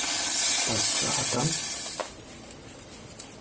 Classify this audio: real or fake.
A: real